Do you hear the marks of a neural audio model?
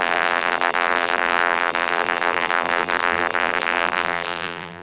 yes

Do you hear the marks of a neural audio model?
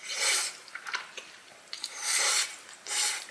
yes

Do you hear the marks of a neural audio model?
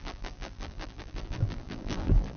yes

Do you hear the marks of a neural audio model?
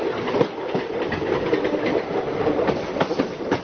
no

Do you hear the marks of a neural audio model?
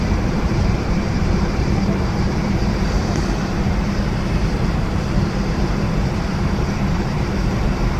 yes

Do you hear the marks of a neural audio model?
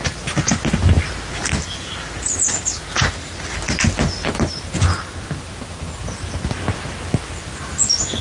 no